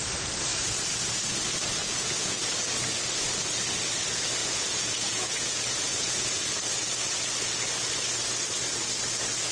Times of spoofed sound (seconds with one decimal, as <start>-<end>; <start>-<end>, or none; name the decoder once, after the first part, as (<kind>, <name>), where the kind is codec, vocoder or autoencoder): 1.8-2.4 (vocoder, Vocos); 4.4-6.5